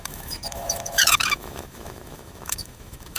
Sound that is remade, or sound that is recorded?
remade